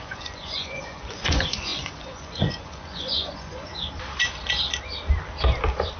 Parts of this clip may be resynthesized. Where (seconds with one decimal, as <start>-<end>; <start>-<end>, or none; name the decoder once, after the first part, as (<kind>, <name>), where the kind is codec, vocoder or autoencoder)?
0.0-3.7 (vocoder, Vocos)

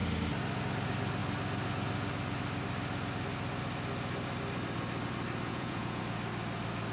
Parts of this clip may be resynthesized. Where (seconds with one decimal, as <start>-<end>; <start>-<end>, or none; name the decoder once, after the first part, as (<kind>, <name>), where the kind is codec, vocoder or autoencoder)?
5.5-6.0 (vocoder, Vocos)

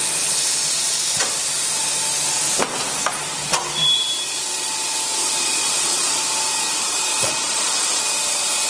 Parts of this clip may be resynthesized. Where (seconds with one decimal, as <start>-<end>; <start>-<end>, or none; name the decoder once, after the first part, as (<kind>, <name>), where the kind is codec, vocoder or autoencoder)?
0.6-1.3 (vocoder, Vocos); 5.1-6.2; 7.1-8.0